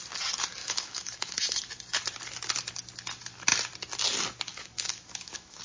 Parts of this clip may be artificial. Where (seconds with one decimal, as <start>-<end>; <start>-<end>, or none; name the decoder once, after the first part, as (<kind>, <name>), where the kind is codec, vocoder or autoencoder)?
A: 0.6-1.4 (autoencoder, DAC-VAE); 4.5-5.6